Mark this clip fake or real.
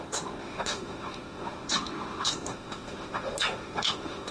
fake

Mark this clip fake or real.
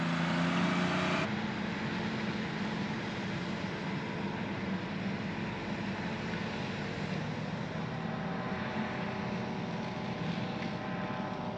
real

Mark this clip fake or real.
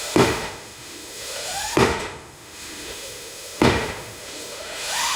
fake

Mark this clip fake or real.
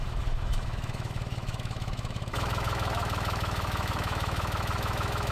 fake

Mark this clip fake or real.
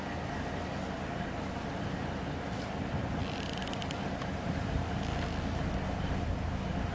real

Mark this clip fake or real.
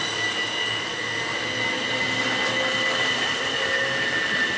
real